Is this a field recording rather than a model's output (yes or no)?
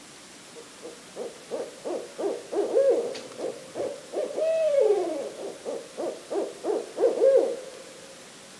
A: yes